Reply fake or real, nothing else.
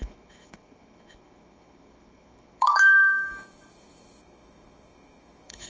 fake